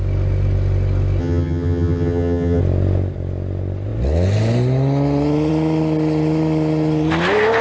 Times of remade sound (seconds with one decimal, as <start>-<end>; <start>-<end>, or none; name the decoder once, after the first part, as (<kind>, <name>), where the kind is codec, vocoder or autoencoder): 1.2-2.6 (vocoder, HiFi-GAN)